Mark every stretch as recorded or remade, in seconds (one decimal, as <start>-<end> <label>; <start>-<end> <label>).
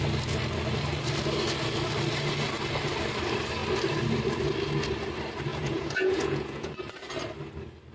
0.0-5.5 recorded; 5.5-6.7 remade; 6.7-7.9 recorded